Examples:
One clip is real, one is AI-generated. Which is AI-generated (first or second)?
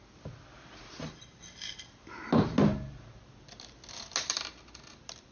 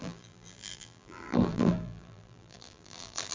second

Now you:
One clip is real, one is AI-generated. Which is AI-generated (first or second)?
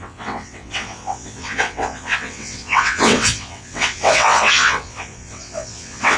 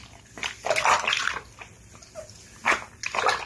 first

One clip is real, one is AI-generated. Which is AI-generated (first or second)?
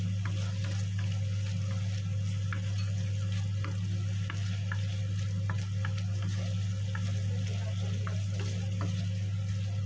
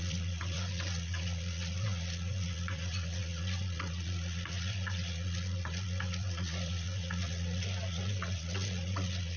second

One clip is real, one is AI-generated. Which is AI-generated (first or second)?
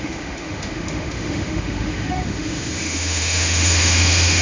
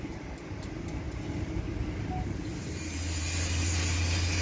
first